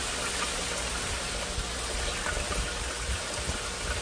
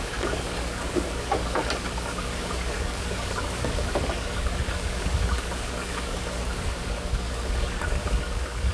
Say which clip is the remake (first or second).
second